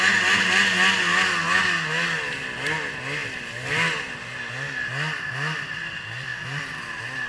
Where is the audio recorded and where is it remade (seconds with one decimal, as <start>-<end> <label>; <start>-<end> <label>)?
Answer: 0.0-7.3 recorded